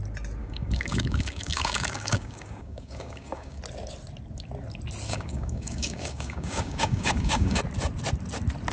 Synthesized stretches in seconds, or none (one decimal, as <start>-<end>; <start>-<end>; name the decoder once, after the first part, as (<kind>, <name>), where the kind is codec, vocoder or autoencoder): 0.4-3.6 (codec, DAC); 5.1-7.6